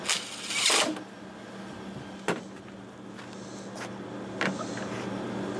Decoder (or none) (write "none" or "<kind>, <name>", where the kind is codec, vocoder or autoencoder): none